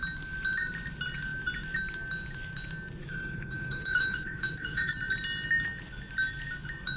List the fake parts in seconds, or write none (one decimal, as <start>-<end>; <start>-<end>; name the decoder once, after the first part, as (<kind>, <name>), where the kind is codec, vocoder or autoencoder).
3.0-4.9 (autoencoder, DAC-VAE)